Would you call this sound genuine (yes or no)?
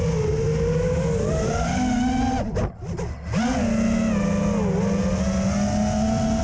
yes